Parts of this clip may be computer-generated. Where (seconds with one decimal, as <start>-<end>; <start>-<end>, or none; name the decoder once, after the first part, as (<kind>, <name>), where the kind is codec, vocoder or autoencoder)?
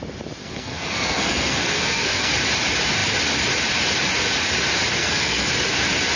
0.4-2.3 (codec, SNAC); 5.0-5.5